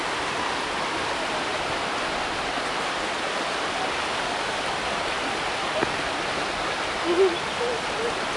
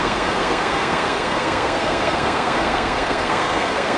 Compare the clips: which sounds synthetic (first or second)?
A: second